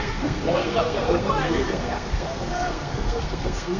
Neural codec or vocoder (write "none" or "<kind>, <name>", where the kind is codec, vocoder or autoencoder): codec, SNAC